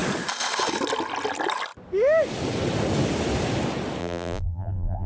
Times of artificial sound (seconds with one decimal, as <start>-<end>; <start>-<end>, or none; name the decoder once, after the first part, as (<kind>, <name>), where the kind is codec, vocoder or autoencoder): 4.0-5.1 (vocoder, BigVGAN v2)